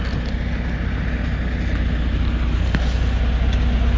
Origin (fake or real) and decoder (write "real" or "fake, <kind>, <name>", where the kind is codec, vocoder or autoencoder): real